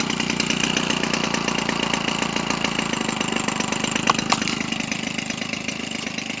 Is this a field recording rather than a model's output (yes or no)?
yes